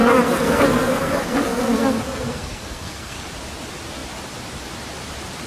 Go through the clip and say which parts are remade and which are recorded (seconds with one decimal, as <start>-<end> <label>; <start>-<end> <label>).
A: 0.0-3.3 remade; 3.3-5.5 recorded